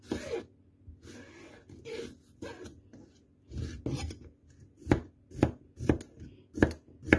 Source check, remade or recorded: recorded